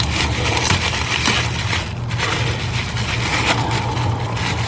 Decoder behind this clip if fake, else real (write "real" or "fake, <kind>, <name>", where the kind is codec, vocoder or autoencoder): real